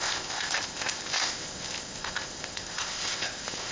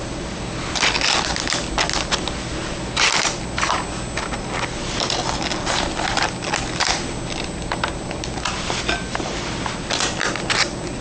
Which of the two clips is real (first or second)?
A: second